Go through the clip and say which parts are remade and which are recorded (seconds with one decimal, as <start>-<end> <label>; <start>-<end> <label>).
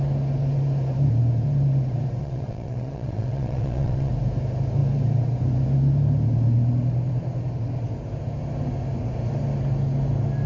0.0-2.2 recorded; 2.2-4.1 remade; 4.1-10.5 recorded